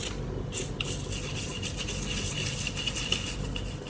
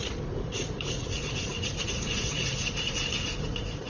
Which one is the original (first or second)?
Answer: first